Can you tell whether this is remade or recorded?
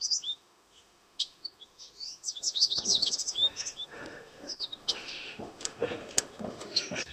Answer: remade